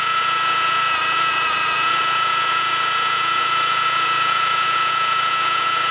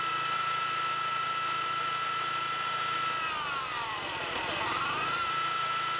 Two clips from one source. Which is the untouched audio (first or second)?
second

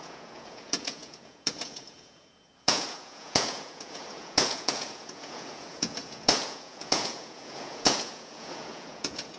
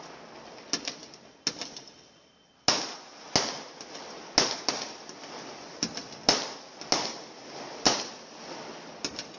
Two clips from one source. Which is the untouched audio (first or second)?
second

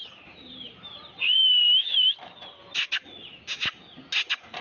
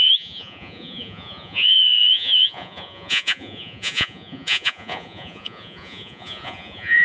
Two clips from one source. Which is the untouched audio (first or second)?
first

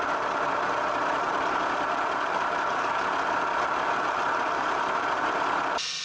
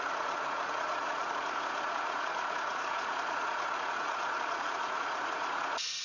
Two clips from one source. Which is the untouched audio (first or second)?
first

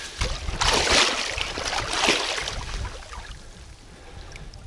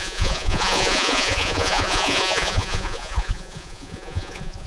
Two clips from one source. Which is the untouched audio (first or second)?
first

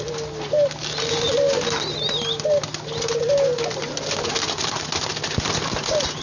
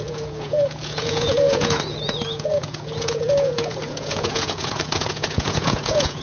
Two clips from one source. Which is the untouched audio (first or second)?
first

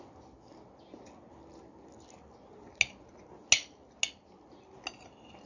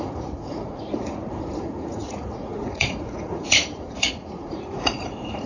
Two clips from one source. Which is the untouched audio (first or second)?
first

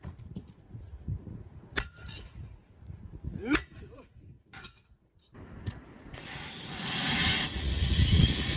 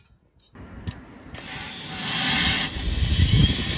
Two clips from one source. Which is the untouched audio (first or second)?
second